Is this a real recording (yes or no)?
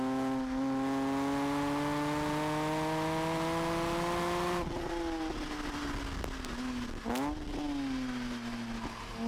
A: yes